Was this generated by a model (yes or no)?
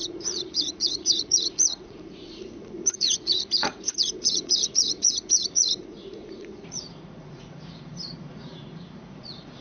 yes